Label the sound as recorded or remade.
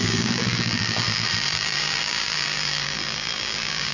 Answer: remade